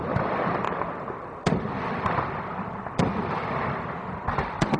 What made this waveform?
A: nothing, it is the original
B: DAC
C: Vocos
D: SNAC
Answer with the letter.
A